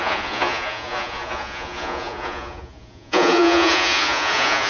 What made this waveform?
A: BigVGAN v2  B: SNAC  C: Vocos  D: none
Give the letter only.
C